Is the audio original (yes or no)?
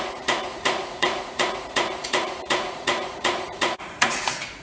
no